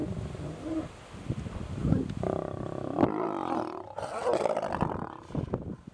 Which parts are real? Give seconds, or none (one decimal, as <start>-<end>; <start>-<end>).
0.0-5.9